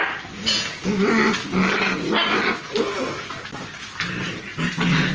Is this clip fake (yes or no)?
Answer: no